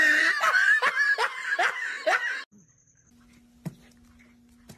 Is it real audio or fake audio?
real